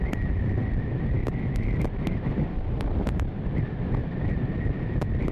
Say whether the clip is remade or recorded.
recorded